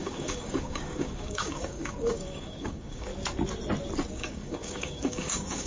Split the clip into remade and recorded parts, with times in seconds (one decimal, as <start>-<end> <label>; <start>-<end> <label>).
0.0-3.1 remade; 3.1-4.1 recorded; 4.1-5.7 remade